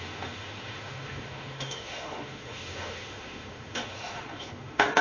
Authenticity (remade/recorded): remade